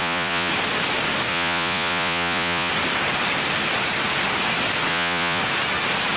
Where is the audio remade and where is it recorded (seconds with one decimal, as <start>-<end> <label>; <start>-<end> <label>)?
0.0-0.5 remade; 0.5-1.3 recorded; 1.3-2.7 remade; 2.7-4.9 recorded; 4.9-5.4 remade; 5.4-6.2 recorded